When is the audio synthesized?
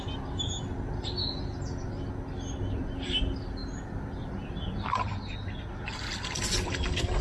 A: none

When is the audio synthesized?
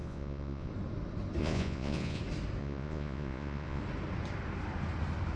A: 0.0-0.7 (vocoder, Vocos); 1.4-2.2; 2.6-3.8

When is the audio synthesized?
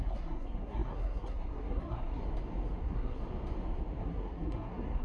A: 0.0-2.2 (codec, SNAC); 2.8-3.2; 4.0-5.0